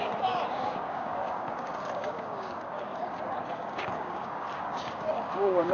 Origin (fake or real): fake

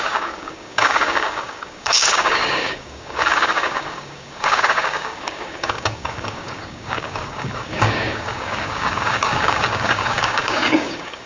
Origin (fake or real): fake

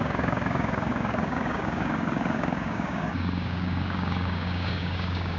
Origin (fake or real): fake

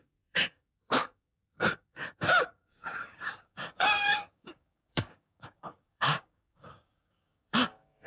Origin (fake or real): fake